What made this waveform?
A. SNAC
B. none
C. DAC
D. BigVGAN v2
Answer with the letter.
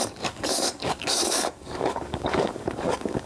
C